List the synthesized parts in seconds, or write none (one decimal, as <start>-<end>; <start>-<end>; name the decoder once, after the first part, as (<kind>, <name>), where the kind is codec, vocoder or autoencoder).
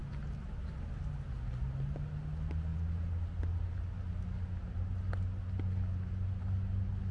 none